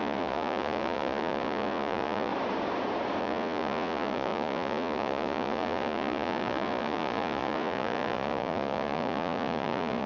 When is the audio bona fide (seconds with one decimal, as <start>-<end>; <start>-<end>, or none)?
2.3-3.2